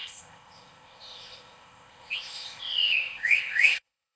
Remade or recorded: remade